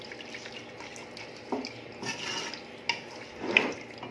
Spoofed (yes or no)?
no